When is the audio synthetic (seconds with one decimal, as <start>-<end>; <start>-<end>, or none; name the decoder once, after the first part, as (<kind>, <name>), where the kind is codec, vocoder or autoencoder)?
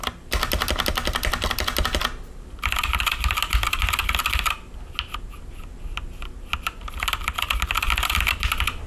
none